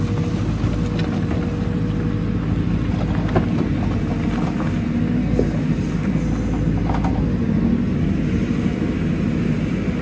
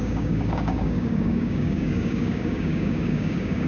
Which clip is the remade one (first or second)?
second